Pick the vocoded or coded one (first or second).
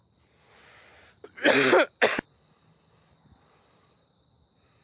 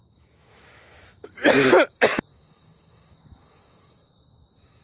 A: second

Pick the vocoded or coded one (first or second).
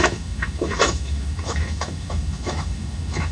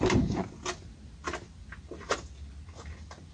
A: first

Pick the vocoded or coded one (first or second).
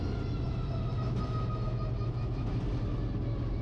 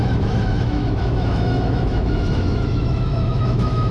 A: second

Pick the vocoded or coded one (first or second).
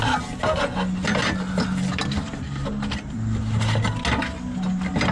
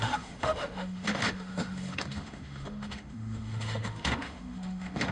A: second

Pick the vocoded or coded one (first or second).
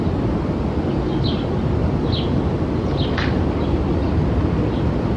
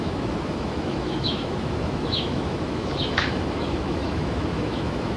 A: second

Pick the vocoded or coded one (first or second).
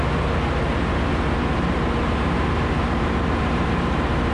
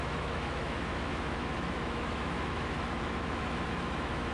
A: second